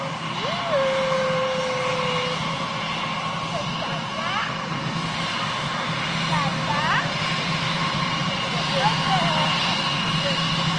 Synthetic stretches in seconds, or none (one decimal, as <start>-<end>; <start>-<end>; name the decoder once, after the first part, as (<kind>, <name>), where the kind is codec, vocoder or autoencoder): 4.4-5.0 (codec, SNAC)